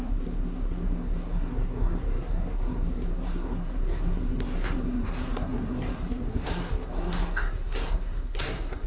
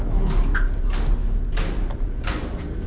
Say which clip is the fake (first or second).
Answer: first